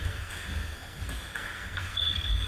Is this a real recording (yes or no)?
no